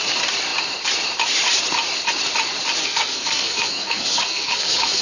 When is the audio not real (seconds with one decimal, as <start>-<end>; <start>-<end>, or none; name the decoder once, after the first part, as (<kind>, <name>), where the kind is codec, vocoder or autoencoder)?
2.8-5.0 (codec, SNAC)